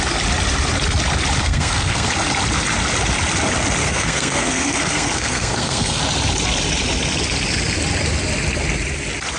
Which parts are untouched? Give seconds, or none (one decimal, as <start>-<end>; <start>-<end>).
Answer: 0.0-1.4; 2.1-3.8; 6.0-9.4